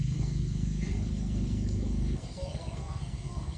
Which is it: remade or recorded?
remade